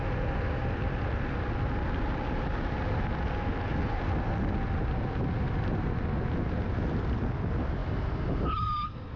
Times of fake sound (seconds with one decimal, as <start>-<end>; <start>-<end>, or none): none